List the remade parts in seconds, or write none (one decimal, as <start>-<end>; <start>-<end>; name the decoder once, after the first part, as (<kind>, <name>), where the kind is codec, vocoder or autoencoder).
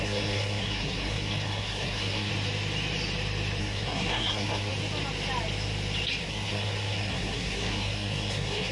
0.0-2.3 (codec, SNAC); 3.6-4.7; 6.2-8.7